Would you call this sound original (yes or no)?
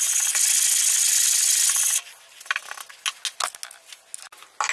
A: yes